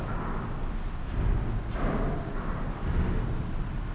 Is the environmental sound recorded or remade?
recorded